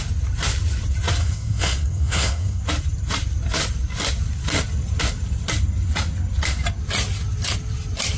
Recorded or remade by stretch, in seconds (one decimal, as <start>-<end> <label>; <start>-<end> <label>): 0.0-1.2 recorded; 1.2-2.6 remade; 2.6-8.2 recorded